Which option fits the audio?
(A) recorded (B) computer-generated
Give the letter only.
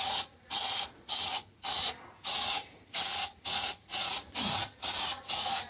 B